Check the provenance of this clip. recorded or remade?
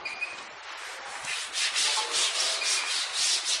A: recorded